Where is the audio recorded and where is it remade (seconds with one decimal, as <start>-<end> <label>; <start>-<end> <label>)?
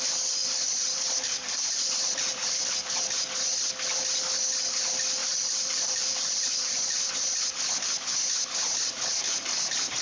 0.0-0.4 recorded; 0.4-2.9 remade; 2.9-5.2 recorded; 5.2-7.2 remade; 7.2-10.0 recorded